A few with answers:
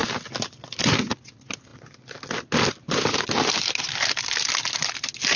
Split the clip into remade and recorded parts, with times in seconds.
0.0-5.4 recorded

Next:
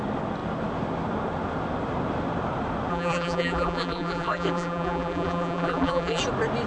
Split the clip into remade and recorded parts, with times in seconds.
0.0-2.9 recorded; 2.9-6.2 remade; 6.2-6.7 recorded

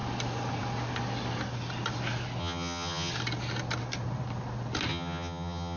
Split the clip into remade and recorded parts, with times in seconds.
0.0-2.4 recorded; 2.4-3.1 remade; 3.1-4.9 recorded; 4.9-5.8 remade

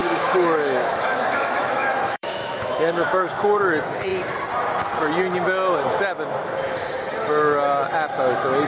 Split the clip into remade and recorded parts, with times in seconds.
0.0-3.6 remade; 3.6-6.4 recorded; 6.4-7.0 remade; 7.0-8.7 recorded

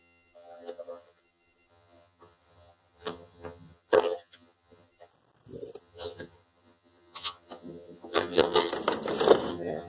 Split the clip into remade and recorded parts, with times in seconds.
0.0-5.1 remade; 5.1-5.8 recorded; 5.8-8.7 remade; 8.7-9.5 recorded; 9.5-9.9 remade

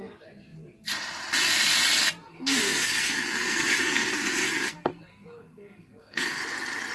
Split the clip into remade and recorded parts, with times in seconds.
0.0-2.3 recorded; 2.3-6.4 remade; 6.4-6.9 recorded

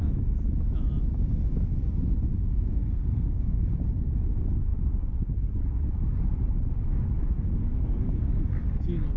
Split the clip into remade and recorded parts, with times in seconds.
0.0-2.4 recorded; 2.4-3.6 remade; 3.6-9.2 recorded